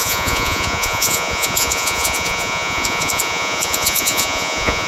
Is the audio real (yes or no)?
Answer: no